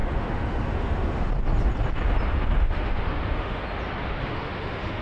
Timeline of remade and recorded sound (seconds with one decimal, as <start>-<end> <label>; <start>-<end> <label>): 0.0-1.3 remade; 1.3-2.6 recorded; 2.6-3.6 remade; 3.6-4.2 recorded; 4.2-5.0 remade